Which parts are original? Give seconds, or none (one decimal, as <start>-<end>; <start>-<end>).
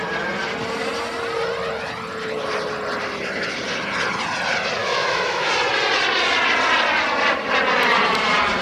0.0-4.8; 5.5-8.6